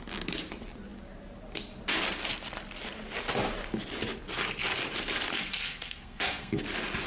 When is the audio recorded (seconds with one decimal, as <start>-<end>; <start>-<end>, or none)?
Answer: 0.0-5.3; 6.6-7.1